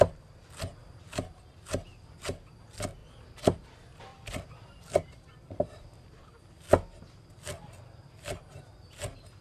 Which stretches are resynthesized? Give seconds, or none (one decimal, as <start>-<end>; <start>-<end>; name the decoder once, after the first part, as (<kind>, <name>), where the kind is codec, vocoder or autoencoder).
0.8-1.5 (vocoder, BigVGAN v2); 3.0-6.4